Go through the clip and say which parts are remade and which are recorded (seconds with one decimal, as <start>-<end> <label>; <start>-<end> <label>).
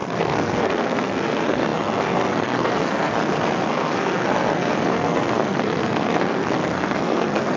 0.0-7.6 remade